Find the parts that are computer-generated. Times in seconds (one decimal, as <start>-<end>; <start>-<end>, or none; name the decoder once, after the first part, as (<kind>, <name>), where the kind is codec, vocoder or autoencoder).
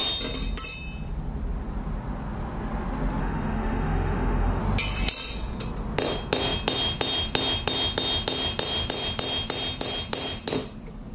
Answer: 3.2-4.6 (autoencoder, DAC-VAE)